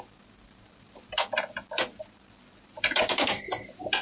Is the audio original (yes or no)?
no